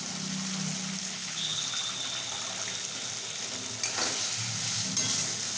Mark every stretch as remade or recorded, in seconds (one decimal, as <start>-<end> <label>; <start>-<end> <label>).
0.0-1.0 recorded; 1.0-1.7 remade; 1.7-5.6 recorded